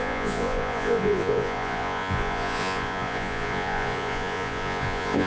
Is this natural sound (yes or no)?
no